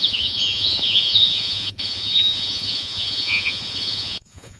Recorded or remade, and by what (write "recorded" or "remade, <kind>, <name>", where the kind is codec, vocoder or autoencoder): remade, vocoder, Vocos